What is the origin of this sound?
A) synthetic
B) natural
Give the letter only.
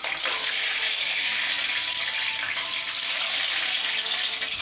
B